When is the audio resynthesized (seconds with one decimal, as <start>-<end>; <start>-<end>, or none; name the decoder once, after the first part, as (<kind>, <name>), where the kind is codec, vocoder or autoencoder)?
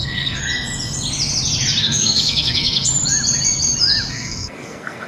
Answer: 0.0-0.4 (codec, SNAC); 1.8-2.9; 4.1-5.1